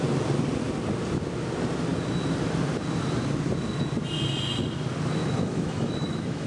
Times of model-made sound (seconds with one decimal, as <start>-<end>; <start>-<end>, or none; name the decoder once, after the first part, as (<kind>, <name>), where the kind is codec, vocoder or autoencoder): 5.2-6.5 (autoencoder, DAC-VAE)